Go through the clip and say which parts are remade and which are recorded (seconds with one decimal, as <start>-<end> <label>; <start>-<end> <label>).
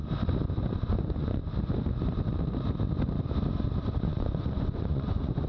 0.0-0.9 recorded; 0.9-1.4 remade; 1.4-4.0 recorded; 4.0-5.5 remade